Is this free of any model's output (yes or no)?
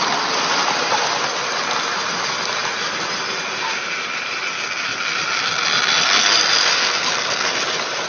yes